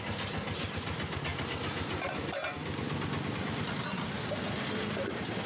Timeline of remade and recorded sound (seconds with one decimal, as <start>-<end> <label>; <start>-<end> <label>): 0.0-1.3 recorded; 1.3-2.1 remade; 2.1-5.5 recorded